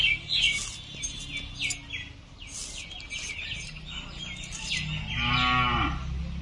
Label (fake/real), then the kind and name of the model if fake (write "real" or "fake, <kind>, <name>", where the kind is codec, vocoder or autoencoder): real